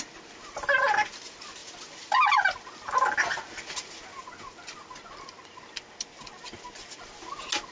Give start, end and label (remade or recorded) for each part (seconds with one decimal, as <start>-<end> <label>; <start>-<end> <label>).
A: 0.0-7.7 recorded